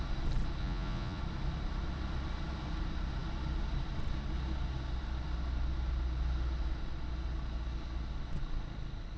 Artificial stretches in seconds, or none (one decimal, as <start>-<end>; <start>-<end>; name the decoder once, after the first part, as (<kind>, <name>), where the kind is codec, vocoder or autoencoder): 0.6-1.2 (vocoder, Vocos)